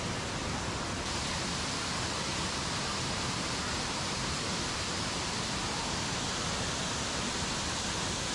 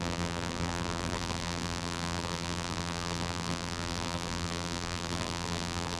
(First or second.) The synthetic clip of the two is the second